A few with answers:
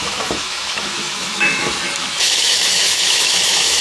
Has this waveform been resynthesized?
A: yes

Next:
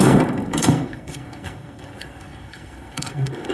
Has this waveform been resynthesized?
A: yes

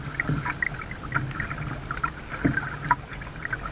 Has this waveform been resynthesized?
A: no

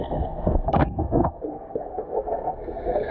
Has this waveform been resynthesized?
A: yes